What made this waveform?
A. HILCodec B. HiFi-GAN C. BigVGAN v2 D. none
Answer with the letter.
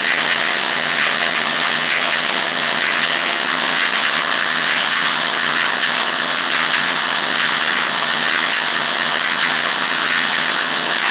B